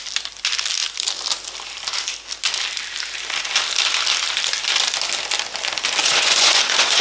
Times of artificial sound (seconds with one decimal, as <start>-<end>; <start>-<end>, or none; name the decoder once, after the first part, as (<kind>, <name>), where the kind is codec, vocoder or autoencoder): 6.0-7.0 (vocoder, Vocos)